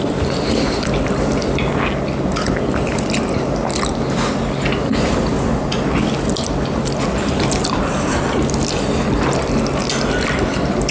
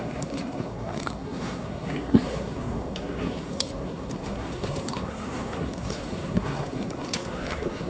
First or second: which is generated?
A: second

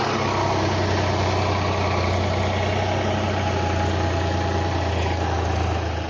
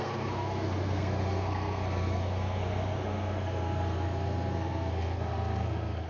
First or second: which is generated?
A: second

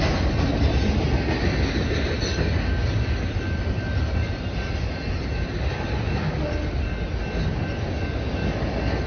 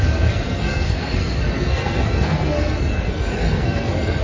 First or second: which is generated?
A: second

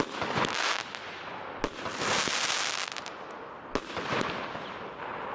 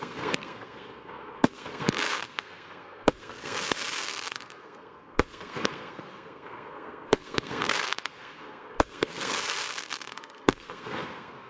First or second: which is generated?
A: second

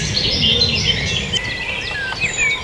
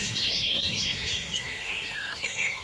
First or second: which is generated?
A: second